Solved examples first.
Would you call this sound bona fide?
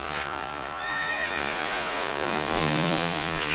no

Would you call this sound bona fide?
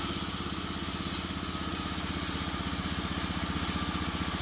yes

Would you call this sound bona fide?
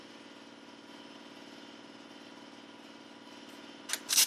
yes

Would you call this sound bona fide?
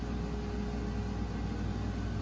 yes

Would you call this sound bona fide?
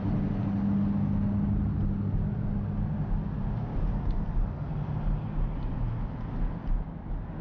yes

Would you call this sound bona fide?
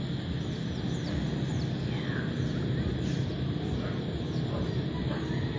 yes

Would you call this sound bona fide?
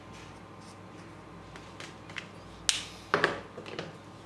yes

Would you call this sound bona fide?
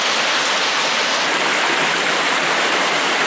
yes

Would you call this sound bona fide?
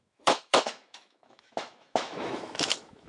no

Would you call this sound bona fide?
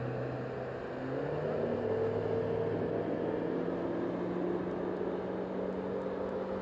yes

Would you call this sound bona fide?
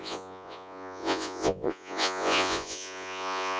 no